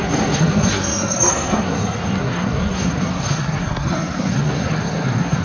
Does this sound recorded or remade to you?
remade